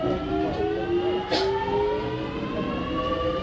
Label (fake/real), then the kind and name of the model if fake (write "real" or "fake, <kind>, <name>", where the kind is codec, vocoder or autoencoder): real